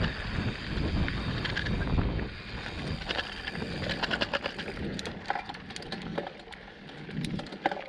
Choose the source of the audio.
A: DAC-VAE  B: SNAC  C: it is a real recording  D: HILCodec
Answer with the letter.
C